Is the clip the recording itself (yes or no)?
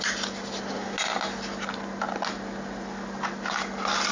yes